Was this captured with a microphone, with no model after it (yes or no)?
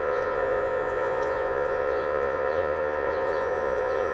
no